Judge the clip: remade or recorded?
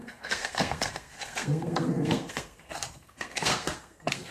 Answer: remade